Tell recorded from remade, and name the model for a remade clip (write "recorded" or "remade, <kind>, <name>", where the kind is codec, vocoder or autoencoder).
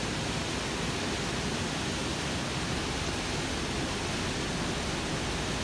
recorded